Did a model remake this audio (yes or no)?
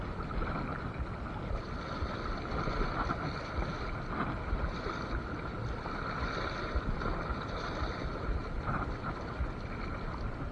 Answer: no